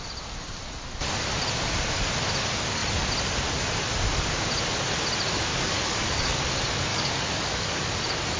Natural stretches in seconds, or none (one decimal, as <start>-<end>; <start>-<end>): 0.0-5.5; 6.4-6.9; 7.8-8.4